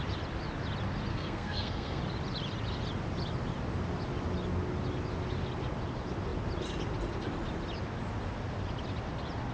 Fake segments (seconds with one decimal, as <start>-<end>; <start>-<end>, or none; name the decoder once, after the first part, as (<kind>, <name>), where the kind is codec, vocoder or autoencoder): 1.1-2.0 (codec, SNAC)

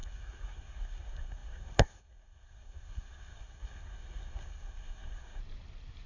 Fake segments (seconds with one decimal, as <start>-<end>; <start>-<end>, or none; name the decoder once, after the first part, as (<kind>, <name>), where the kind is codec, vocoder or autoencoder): 0.0-5.4 (codec, SNAC)

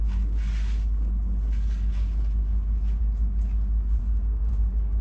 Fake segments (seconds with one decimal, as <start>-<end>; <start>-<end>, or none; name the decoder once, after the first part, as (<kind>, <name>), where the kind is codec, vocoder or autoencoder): 4.0-4.5 (codec, SNAC)

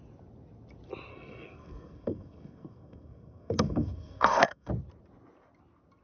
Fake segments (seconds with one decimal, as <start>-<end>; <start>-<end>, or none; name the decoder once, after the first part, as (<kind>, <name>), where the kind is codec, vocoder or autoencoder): 1.1-4.7 (codec, SNAC)

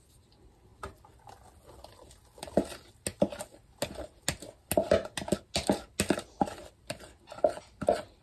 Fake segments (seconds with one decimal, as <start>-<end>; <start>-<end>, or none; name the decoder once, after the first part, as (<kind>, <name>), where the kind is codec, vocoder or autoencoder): none